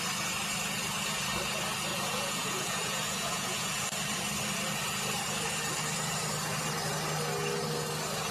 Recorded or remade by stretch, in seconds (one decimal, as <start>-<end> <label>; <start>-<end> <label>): 0.0-1.9 recorded; 1.9-3.8 remade; 3.8-8.3 recorded